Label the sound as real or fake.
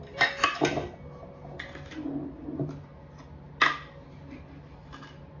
real